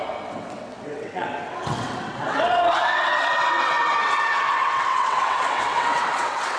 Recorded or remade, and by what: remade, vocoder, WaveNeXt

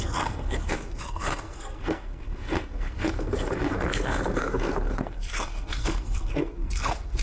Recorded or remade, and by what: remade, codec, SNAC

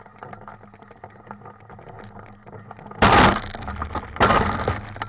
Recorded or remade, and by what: remade, vocoder, BigVGAN v2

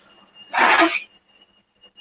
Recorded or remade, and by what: recorded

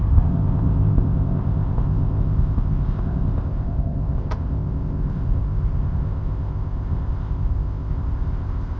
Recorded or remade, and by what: remade, codec, ZipCodec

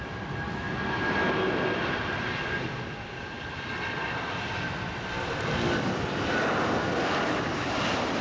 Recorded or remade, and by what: recorded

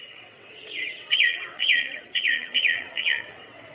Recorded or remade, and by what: remade, vocoder, WaveNeXt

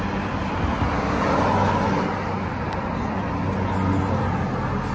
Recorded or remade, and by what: recorded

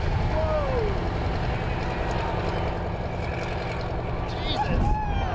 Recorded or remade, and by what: recorded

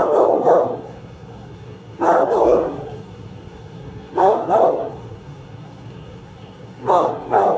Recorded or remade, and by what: remade, codec, SNAC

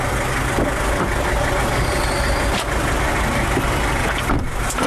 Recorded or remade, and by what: recorded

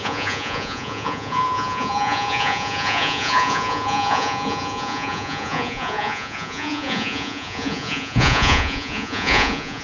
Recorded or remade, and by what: remade, vocoder, Vocos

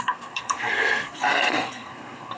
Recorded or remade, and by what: remade, codec, SNAC